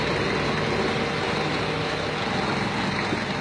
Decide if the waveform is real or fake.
real